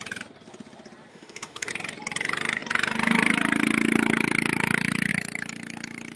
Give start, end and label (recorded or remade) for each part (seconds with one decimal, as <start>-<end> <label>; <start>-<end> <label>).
0.0-1.1 recorded; 1.1-1.7 remade; 1.7-6.2 recorded